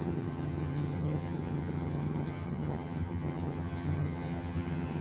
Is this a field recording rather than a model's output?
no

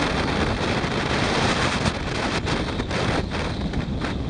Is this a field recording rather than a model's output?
yes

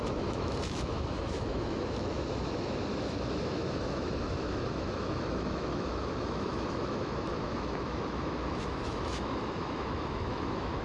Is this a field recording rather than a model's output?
no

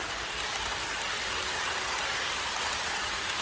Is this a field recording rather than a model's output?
yes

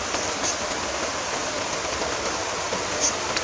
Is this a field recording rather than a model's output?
yes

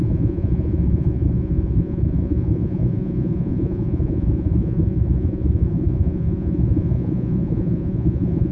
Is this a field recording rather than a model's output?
no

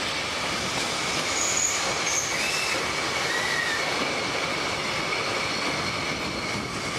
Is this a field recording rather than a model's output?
yes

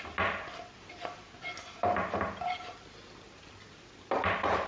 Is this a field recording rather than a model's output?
yes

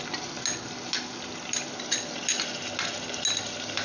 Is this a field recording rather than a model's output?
yes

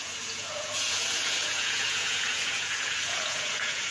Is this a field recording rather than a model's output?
no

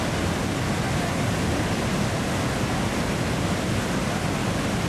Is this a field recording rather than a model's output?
yes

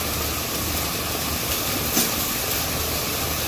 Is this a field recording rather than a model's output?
yes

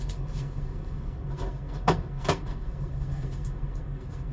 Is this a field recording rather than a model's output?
no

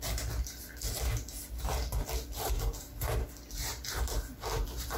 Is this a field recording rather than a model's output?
yes